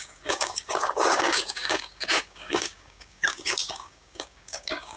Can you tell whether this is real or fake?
fake